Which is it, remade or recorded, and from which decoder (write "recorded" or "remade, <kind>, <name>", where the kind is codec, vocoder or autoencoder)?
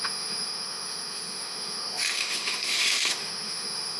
remade, autoencoder, DAC-VAE